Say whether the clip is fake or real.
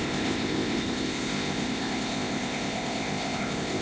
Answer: fake